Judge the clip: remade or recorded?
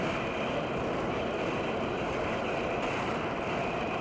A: recorded